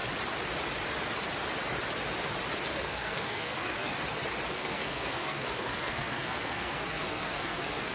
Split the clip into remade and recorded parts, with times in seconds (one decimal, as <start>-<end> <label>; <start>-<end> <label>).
0.0-2.7 recorded; 2.7-3.9 remade; 3.9-4.5 recorded; 4.5-7.9 remade